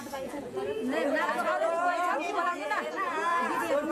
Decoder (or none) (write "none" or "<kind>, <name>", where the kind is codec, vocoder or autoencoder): vocoder, Vocos